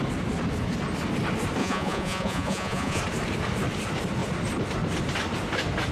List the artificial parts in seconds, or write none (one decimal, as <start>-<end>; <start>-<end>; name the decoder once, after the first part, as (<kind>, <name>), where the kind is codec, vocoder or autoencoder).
1.6-3.0 (vocoder, Vocos)